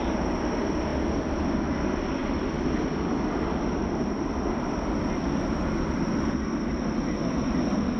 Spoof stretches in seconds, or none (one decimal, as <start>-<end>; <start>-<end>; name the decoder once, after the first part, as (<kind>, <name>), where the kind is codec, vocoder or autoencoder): none